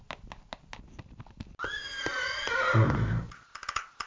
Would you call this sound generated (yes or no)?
no